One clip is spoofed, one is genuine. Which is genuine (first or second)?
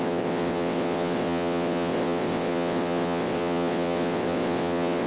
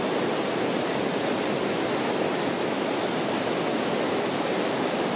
second